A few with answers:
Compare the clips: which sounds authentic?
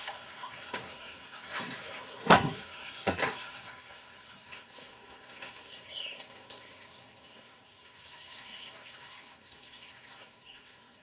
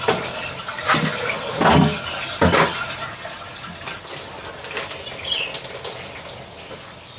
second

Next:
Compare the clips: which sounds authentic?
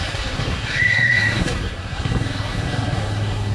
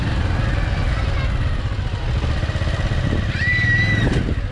second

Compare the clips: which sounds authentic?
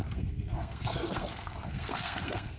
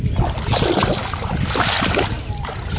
second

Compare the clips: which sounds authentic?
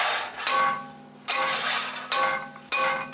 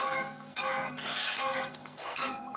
first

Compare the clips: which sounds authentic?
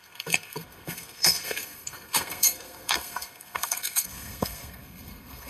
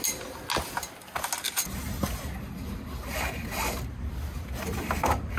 second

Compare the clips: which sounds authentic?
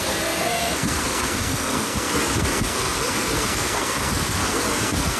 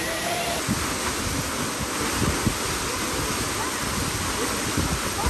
second